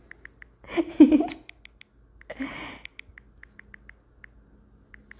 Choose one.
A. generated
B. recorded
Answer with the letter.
B